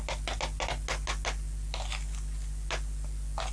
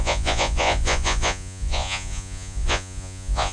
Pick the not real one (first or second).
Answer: second